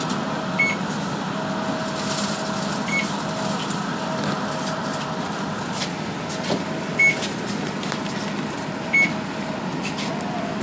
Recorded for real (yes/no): yes